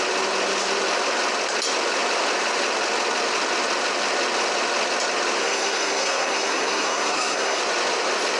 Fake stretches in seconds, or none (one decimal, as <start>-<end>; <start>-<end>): 5.4-7.6